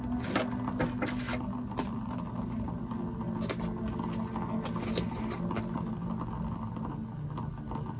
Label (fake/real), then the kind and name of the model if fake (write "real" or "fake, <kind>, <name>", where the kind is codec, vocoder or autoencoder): real